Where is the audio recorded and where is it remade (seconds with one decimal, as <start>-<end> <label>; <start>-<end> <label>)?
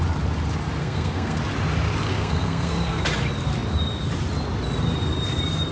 0.0-0.8 recorded; 0.8-1.4 remade; 1.4-2.1 recorded; 2.1-3.0 remade; 3.0-5.7 recorded